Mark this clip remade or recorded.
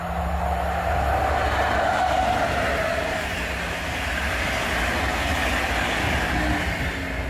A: recorded